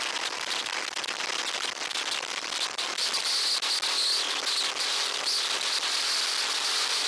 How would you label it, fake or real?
real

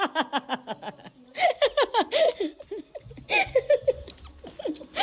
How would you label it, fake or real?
real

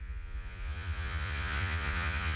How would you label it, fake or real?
fake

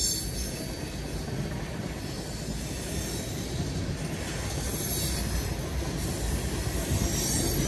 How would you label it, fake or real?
real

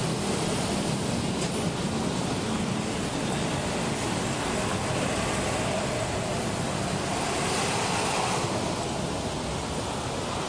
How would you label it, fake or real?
real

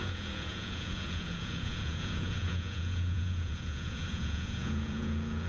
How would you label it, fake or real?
fake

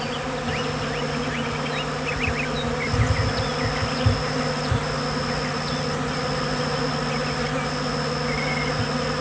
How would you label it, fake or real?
real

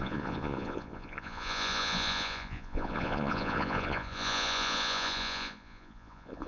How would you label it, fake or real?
fake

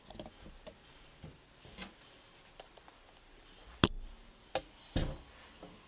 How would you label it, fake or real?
real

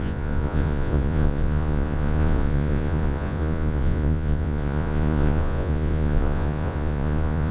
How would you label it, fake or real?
fake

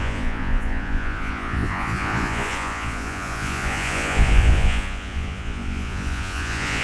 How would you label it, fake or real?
fake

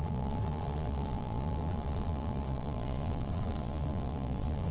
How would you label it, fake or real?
fake